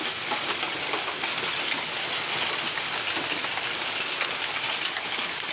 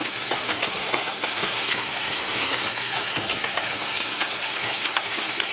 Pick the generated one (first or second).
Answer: second